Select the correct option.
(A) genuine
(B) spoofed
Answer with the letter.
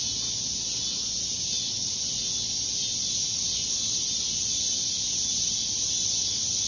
A